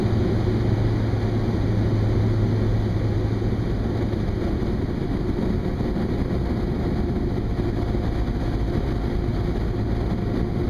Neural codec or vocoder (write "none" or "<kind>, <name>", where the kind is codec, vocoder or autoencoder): none